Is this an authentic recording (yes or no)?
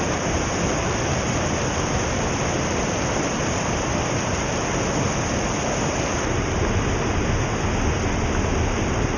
yes